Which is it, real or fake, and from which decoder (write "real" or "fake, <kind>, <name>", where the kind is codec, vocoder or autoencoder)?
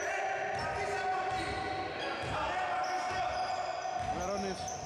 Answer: real